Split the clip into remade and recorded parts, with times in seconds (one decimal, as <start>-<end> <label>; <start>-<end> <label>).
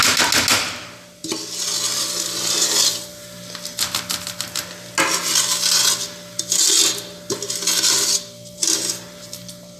0.0-9.8 recorded